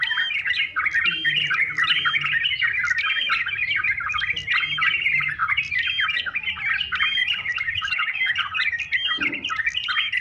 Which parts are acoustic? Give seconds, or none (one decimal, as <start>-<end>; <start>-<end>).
0.0-5.4; 6.5-7.2; 8.7-10.2